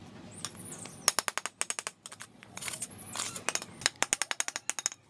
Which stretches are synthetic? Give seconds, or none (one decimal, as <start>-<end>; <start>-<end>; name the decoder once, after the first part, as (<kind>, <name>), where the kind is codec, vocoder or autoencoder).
2.2-2.9 (vocoder, Vocos)